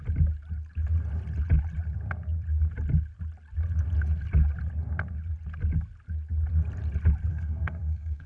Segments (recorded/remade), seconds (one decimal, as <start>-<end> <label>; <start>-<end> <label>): 0.0-7.3 recorded; 7.3-8.3 remade